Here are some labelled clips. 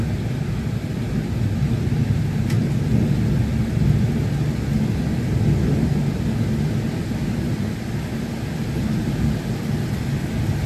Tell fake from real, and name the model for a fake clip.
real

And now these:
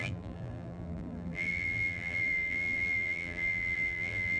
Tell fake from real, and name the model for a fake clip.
fake, vocoder, BigVGAN v2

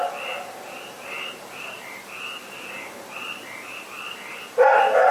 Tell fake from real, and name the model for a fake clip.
real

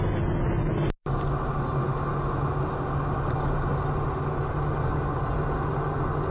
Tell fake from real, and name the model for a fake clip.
real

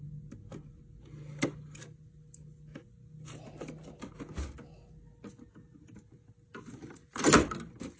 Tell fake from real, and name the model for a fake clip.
real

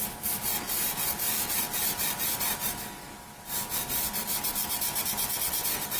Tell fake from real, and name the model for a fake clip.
real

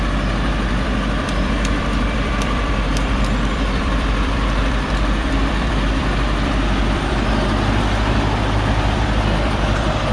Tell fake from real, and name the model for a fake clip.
fake, vocoder, BigVGAN v2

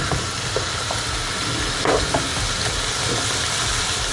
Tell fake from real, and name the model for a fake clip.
real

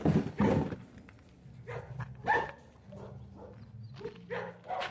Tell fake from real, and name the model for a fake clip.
real